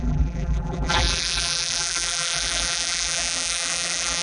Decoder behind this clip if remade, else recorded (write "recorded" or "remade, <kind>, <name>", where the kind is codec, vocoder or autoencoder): remade, vocoder, BigVGAN v2